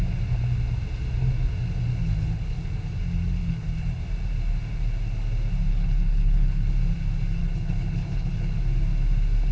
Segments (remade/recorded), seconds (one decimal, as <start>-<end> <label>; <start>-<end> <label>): 0.0-1.9 recorded; 1.9-2.7 remade; 2.7-3.4 recorded; 3.4-4.0 remade; 4.0-5.7 recorded; 5.7-6.7 remade; 6.7-7.4 recorded; 7.4-8.6 remade; 8.6-9.5 recorded